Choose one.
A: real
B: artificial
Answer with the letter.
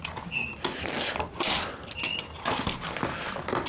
A